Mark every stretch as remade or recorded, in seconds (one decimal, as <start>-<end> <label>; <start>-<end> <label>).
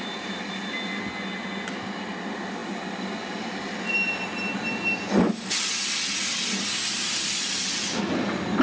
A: 0.0-8.6 recorded